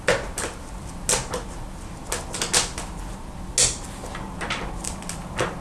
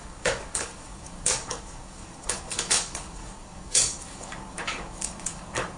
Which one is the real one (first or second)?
first